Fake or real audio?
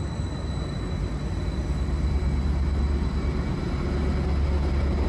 real